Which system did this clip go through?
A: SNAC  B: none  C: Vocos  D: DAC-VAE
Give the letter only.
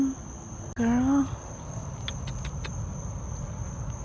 B